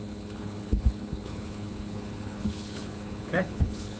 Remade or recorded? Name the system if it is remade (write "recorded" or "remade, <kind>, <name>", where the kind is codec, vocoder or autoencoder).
remade, codec, HILCodec